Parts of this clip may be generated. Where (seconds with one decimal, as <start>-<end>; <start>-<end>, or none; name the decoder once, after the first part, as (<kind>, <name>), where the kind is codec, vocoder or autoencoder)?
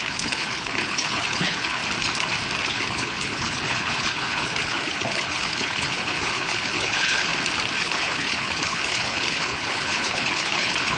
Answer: 0.0-1.8 (codec, HILCodec); 2.7-7.3; 7.8-11.0